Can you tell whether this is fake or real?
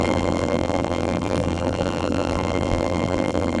fake